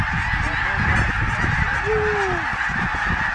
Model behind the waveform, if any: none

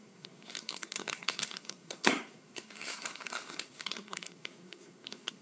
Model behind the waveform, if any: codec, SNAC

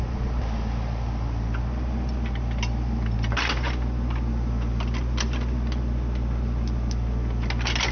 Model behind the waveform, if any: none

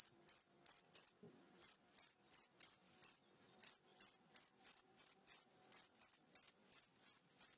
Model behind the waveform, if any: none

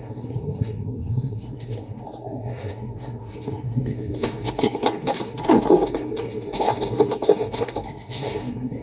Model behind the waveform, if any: codec, SNAC